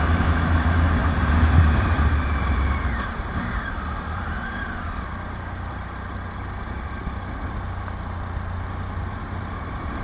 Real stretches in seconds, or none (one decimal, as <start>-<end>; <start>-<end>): 0.0-1.0; 5.0-10.0